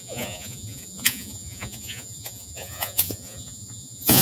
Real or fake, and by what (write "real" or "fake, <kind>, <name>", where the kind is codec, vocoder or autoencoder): fake, vocoder, Vocos